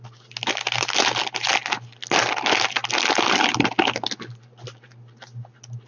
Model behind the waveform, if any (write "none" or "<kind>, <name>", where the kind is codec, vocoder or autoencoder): none